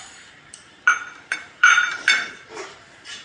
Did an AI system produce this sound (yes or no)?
yes